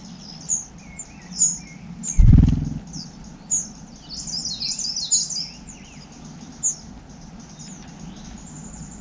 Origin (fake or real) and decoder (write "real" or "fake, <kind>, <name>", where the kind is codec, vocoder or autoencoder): real